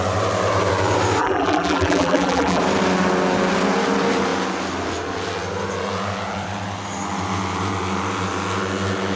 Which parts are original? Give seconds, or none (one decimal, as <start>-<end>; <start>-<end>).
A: 0.0-1.2; 2.6-9.2